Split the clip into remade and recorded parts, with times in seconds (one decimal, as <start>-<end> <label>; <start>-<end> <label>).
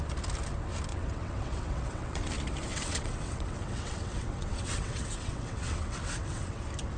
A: 0.0-0.9 recorded; 0.9-2.3 remade; 2.3-2.7 recorded; 2.7-6.6 remade; 6.6-7.0 recorded